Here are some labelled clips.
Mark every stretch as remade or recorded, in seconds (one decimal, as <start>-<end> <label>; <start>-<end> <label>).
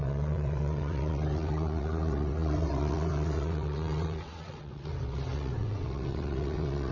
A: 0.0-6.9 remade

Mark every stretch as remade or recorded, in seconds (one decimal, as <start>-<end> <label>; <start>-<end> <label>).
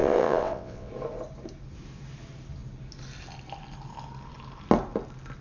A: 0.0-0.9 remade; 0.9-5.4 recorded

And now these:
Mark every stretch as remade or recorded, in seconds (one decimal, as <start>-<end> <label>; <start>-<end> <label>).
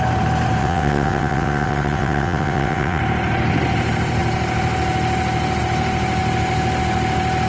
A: 0.0-0.6 recorded; 0.6-3.0 remade; 3.0-7.5 recorded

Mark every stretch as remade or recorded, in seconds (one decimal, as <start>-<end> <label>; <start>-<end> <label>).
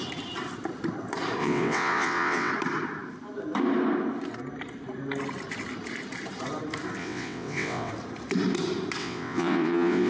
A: 0.0-1.4 recorded; 1.4-2.5 remade; 2.5-7.0 recorded; 7.0-7.9 remade; 7.9-9.0 recorded; 9.0-10.1 remade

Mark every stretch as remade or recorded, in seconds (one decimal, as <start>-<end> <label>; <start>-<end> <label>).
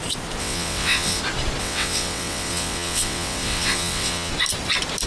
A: 0.0-0.4 recorded; 0.4-1.2 remade; 1.2-1.6 recorded; 1.6-4.3 remade; 4.3-5.1 recorded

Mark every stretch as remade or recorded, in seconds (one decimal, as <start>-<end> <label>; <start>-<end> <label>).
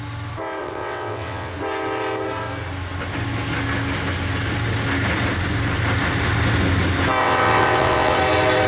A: 0.0-0.6 recorded; 0.6-1.5 remade; 1.5-7.2 recorded; 7.2-8.2 remade; 8.2-8.7 recorded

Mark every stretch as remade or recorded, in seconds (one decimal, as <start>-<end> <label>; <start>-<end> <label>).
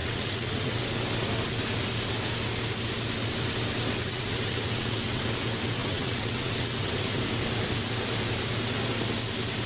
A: 0.0-0.8 remade; 0.8-4.0 recorded; 4.0-5.2 remade; 5.2-5.8 recorded; 5.8-7.2 remade; 7.2-9.7 recorded